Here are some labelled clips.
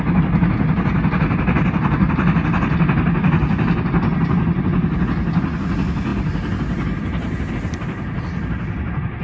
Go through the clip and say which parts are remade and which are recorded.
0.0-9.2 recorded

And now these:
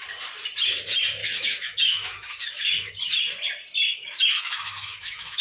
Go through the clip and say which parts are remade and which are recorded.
0.0-1.2 recorded; 1.2-2.9 remade; 2.9-3.9 recorded; 3.9-5.4 remade

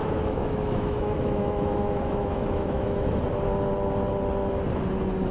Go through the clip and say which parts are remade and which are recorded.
0.0-3.2 remade; 3.2-5.3 recorded

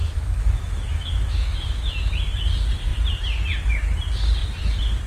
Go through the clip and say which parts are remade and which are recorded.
0.0-2.2 remade; 2.2-5.1 recorded

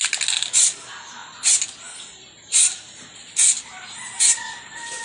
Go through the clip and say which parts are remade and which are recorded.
0.0-5.0 recorded

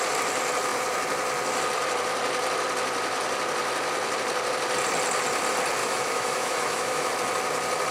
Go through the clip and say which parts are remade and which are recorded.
0.0-5.8 recorded; 5.8-7.1 remade; 7.1-7.9 recorded

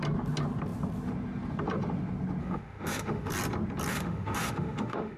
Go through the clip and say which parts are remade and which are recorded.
0.0-2.4 recorded; 2.4-3.3 remade; 3.3-3.9 recorded; 3.9-5.2 remade

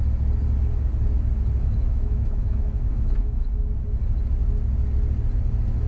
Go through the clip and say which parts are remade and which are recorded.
0.0-1.6 recorded; 1.6-3.7 remade; 3.7-5.9 recorded